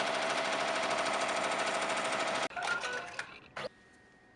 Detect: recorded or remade recorded